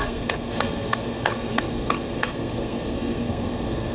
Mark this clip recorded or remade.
remade